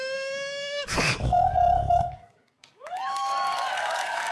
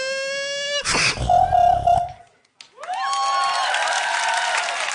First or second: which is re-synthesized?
first